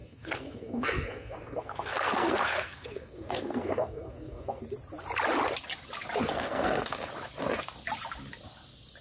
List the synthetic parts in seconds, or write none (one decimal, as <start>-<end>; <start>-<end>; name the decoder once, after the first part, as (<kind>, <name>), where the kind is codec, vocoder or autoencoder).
0.0-4.6 (codec, SNAC); 6.2-7.1